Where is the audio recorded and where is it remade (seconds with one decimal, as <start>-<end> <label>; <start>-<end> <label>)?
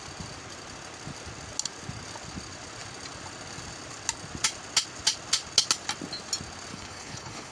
0.0-6.7 recorded; 6.7-7.5 remade